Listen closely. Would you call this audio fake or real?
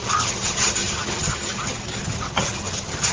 fake